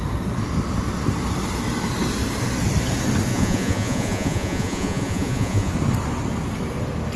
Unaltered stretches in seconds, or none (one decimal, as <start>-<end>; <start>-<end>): 0.0-3.3; 5.7-7.2